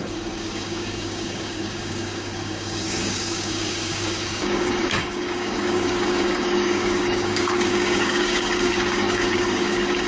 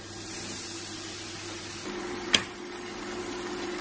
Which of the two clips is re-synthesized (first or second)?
first